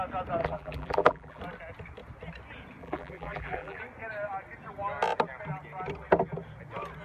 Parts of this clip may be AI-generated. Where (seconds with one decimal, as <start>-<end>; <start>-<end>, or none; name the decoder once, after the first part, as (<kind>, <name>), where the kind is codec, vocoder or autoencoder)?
0.4-1.4 (vocoder, BigVGAN v2); 2.8-3.8